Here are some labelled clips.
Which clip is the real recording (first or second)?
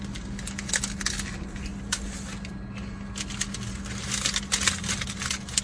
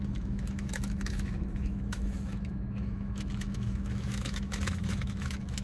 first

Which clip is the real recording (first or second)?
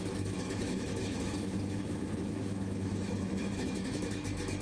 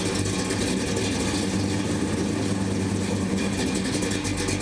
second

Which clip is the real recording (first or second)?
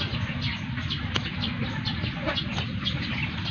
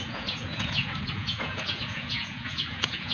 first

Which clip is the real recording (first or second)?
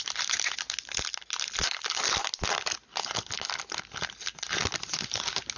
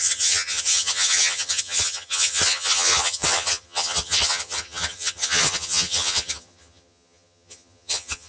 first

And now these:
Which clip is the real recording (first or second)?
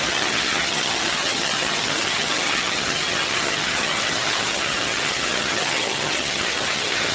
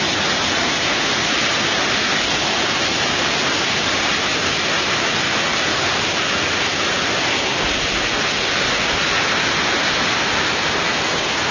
second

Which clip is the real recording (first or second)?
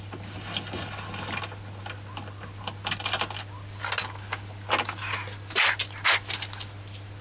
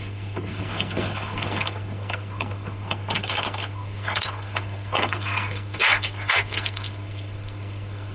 first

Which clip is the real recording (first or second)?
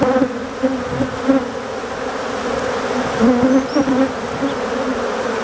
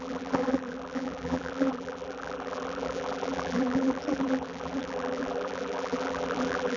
first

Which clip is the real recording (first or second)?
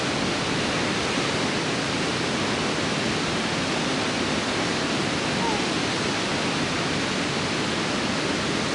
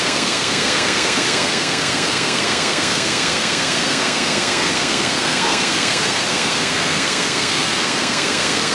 first